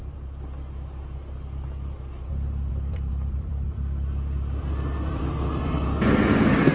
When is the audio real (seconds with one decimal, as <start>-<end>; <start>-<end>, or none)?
0.0-2.7